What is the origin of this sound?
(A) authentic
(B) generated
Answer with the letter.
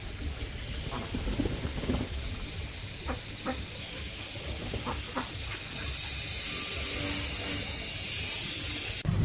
A